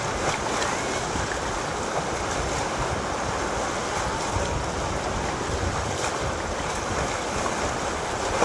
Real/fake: real